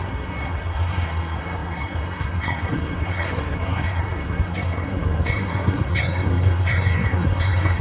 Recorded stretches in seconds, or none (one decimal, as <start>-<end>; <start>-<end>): none